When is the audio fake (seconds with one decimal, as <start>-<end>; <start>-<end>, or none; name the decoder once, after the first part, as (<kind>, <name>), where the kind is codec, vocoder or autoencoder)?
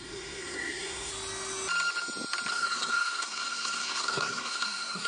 0.0-1.1 (codec, SNAC); 2.5-5.1